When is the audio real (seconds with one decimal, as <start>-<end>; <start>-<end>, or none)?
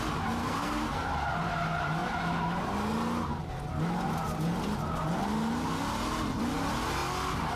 0.0-0.4; 1.1-7.6